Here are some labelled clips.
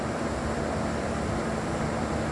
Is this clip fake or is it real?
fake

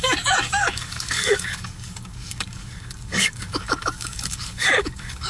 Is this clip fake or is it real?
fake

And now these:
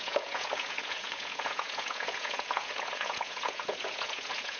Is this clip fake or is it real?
fake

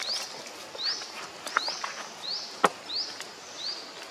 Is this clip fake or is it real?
real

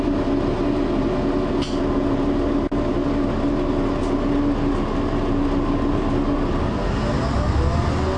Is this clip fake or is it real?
real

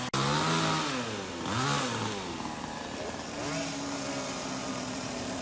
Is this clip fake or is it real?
real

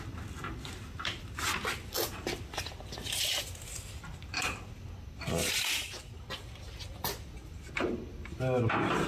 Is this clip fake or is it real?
real